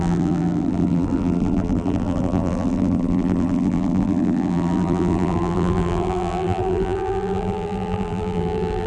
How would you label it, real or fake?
fake